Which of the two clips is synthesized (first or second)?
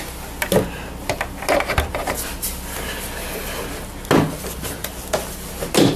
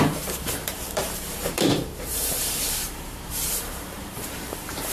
second